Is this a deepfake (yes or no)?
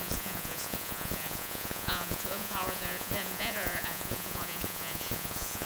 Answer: yes